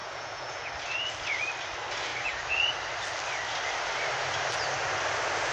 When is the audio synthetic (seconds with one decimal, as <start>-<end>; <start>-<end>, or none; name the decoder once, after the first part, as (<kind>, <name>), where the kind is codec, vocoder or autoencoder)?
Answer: 0.0-0.7 (vocoder, Vocos)